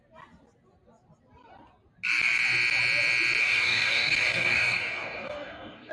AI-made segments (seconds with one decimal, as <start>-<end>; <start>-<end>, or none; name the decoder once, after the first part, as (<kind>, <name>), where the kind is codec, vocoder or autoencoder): 3.4-5.9 (codec, DAC)